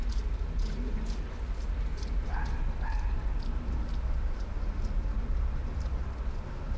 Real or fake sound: real